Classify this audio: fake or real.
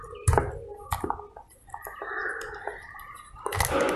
real